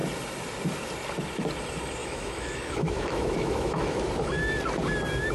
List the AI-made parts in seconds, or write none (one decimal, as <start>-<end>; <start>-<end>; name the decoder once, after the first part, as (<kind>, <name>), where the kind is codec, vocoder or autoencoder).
2.0-4.0 (autoencoder, DAC-VAE)